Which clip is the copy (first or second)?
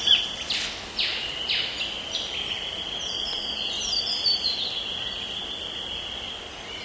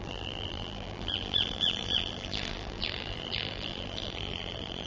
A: second